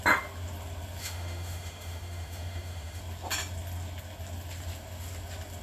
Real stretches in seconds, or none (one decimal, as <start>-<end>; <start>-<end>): 0.0-1.0; 3.0-5.6